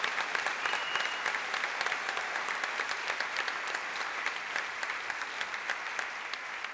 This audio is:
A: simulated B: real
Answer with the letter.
A